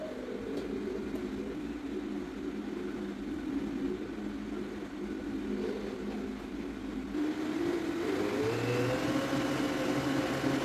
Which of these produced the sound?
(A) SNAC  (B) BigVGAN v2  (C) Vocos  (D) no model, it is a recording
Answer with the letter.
D